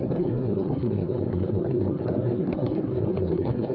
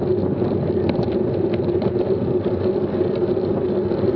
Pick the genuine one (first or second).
second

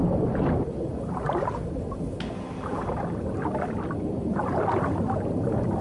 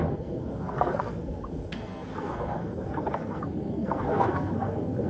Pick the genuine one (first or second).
first